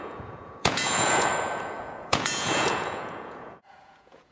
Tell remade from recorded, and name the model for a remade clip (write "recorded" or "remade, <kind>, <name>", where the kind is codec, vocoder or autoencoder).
remade, vocoder, Vocos